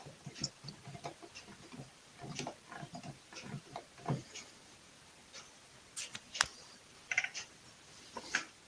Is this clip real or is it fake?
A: real